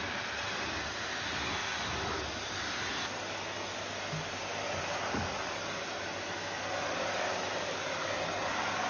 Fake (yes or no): no